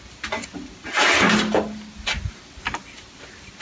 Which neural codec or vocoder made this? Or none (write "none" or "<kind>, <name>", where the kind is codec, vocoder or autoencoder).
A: none